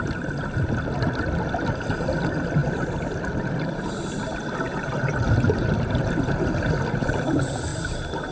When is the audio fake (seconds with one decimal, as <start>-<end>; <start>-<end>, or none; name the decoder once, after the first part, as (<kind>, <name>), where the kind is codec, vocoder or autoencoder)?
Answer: 4.7-6.4 (vocoder, BigVGAN v2)